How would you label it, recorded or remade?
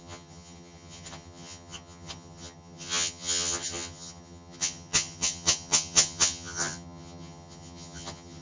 remade